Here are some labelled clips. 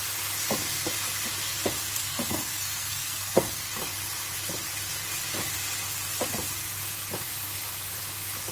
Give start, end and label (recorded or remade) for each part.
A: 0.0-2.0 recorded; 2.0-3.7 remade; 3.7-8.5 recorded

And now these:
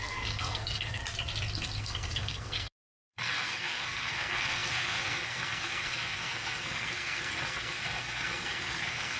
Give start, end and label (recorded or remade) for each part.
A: 0.0-1.0 remade; 1.0-1.8 recorded; 1.8-9.2 remade

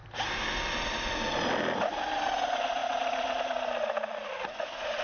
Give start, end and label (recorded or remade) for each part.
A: 0.0-5.0 recorded

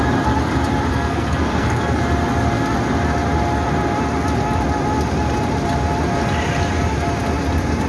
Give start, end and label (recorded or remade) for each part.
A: 0.0-0.9 recorded; 0.9-2.0 remade; 2.0-7.9 recorded

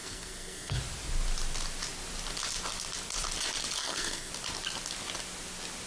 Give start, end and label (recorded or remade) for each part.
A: 0.0-0.8 remade; 0.8-3.8 recorded; 3.8-4.3 remade; 4.3-5.9 recorded

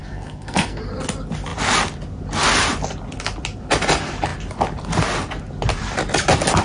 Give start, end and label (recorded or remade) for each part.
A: 0.0-0.8 remade; 0.8-6.6 recorded

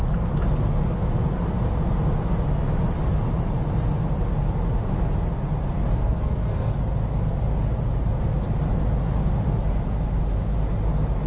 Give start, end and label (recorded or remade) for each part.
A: 0.0-6.0 recorded; 6.0-6.8 remade; 6.8-11.3 recorded

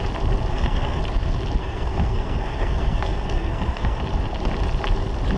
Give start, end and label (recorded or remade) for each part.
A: 0.0-0.5 recorded; 0.5-1.0 remade; 1.0-1.6 recorded; 1.6-4.0 remade; 4.0-5.4 recorded